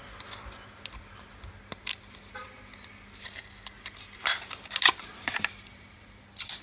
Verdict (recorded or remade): recorded